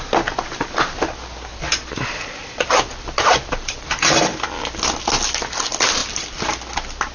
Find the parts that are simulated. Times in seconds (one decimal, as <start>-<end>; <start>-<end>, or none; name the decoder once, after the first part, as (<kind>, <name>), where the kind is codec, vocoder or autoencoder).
1.5-5.0 (vocoder, BigVGAN v2); 6.0-6.5